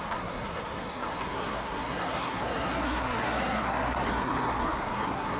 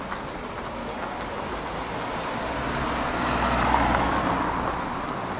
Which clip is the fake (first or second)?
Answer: first